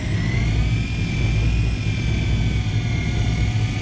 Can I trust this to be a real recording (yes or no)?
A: yes